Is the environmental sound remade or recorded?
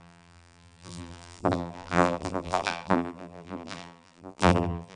remade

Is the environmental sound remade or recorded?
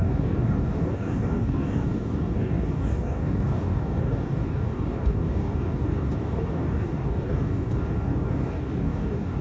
remade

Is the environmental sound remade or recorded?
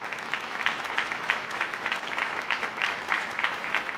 remade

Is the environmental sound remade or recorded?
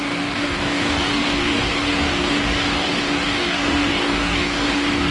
remade